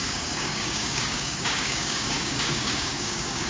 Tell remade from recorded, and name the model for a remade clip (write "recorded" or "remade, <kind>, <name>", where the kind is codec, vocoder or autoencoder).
remade, codec, DAC